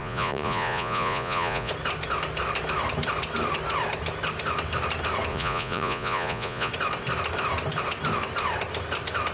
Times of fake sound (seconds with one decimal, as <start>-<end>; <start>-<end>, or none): 0.0-1.7; 5.3-6.7

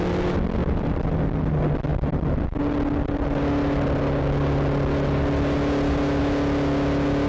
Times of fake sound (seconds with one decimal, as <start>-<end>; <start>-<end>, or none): 0.6-1.1

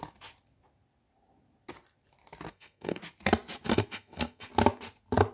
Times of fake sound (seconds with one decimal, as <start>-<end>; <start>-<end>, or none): 2.5-3.0; 3.7-4.5

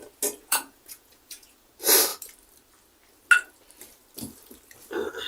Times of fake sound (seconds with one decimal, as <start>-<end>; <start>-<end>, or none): 0.4-1.7